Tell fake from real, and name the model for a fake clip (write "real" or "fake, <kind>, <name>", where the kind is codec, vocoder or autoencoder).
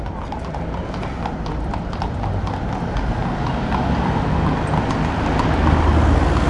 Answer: real